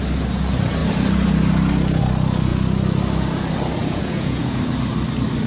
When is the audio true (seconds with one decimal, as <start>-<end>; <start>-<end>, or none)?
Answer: 0.0-3.8; 4.6-5.5